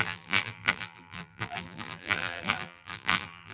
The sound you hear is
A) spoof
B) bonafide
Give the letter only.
A